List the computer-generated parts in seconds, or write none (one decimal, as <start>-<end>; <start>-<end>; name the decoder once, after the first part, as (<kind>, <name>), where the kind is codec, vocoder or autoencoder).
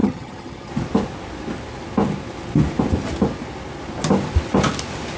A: 0.0-0.7 (vocoder, HiFi-GAN)